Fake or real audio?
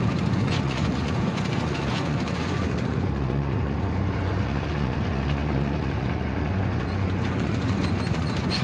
fake